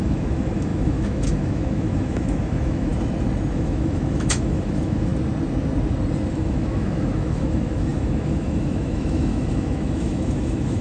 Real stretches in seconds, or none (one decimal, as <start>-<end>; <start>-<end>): 2.9-3.5; 5.1-6.3

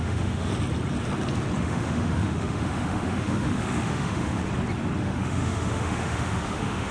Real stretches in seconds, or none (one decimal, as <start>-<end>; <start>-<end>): 0.5-1.6; 4.4-5.0

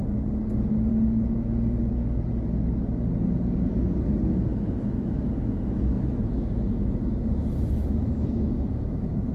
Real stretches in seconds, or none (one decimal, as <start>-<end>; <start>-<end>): 0.0-4.5; 6.9-7.4

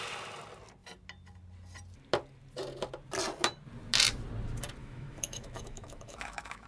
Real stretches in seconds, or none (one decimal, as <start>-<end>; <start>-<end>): 0.0-4.8

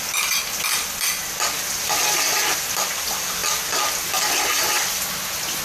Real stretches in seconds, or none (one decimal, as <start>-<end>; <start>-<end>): 0.0-5.6

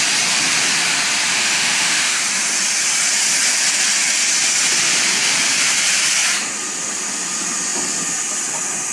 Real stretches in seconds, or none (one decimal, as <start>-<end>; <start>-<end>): 0.0-1.3; 2.2-8.9